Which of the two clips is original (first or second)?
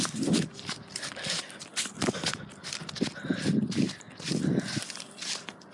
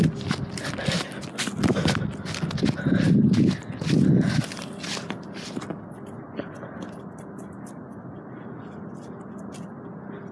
second